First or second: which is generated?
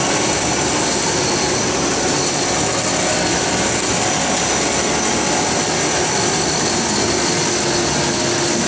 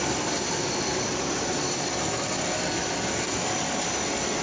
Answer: second